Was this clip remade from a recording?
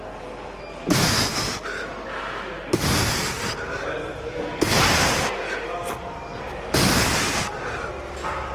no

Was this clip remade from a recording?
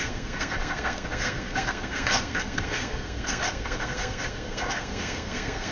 yes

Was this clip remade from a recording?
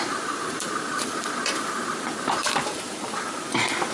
yes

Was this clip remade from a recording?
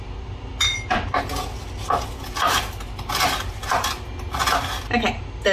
no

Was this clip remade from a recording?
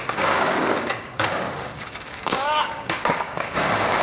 yes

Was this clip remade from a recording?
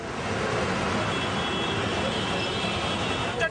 no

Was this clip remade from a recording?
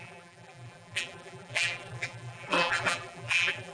yes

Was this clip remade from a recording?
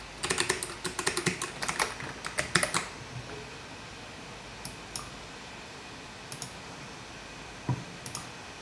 no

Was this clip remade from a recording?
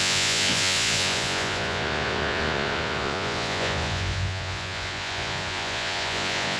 yes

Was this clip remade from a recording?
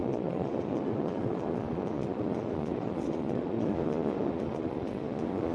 yes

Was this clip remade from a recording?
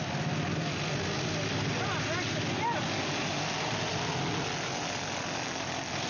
no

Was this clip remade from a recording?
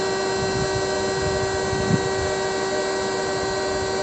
no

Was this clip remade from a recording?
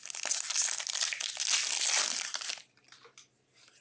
no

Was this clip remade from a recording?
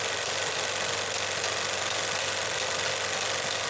no